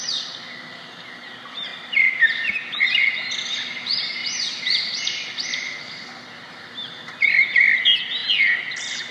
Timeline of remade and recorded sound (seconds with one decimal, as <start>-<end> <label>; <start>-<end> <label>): 0.0-4.2 recorded; 4.2-7.8 remade; 7.8-9.1 recorded